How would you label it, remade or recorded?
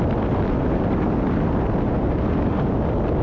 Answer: recorded